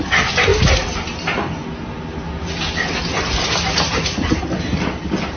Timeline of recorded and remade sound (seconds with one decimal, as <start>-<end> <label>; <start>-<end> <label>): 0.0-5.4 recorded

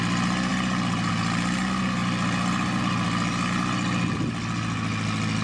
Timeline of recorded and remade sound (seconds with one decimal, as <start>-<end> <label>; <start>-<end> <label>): 0.0-5.4 recorded

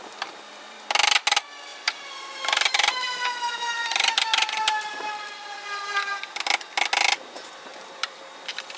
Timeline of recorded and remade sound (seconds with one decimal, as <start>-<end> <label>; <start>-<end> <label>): 0.0-1.7 recorded; 1.7-6.2 remade; 6.2-7.7 recorded; 7.7-8.2 remade; 8.2-8.8 recorded